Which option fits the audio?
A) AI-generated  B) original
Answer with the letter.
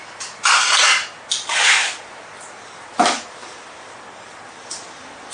B